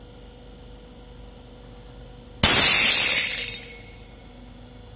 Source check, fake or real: real